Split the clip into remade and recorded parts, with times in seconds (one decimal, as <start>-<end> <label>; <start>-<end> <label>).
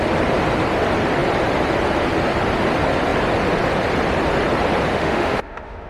0.0-4.9 recorded; 4.9-5.9 remade